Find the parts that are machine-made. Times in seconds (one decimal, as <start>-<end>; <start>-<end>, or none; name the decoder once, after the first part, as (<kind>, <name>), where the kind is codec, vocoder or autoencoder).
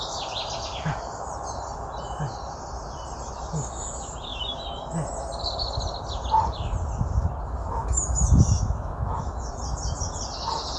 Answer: 7.6-9.5 (autoencoder, DAC-VAE)